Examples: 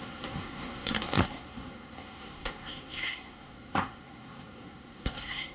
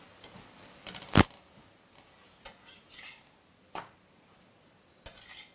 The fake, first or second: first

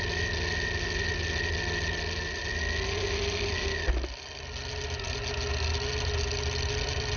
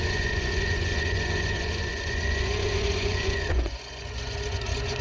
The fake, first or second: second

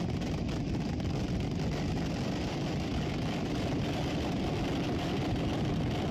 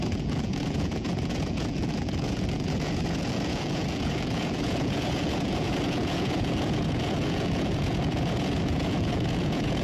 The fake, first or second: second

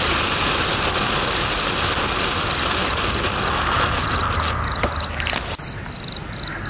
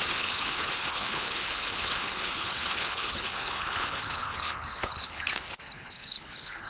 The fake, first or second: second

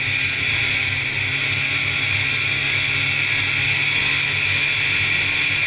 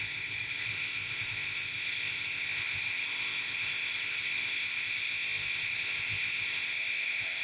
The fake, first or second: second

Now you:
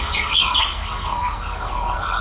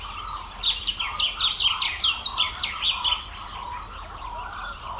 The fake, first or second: first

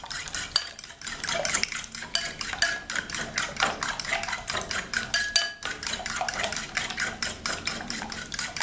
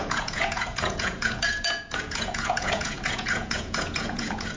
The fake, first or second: second